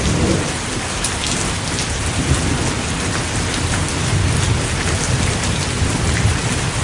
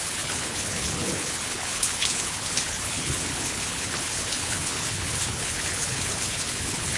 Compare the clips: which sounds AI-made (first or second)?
second